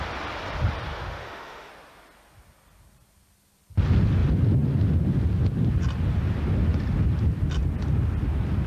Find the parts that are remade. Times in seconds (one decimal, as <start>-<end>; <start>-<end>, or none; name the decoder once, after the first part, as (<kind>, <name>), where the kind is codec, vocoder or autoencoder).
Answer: 0.9-1.7 (autoencoder, DAC-VAE)